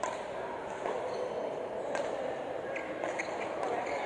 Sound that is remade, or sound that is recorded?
recorded